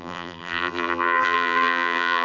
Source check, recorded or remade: remade